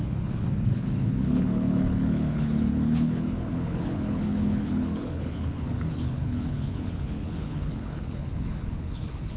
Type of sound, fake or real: fake